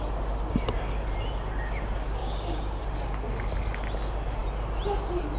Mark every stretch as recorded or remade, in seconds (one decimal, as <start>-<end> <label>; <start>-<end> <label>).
0.0-2.2 recorded; 2.2-2.8 remade; 2.8-5.4 recorded